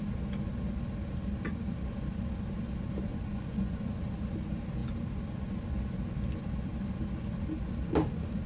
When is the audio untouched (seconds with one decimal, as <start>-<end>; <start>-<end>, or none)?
0.0-3.1; 3.9-8.5

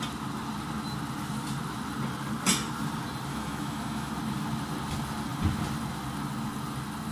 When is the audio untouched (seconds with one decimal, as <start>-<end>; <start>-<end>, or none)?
0.0-3.3; 4.1-7.1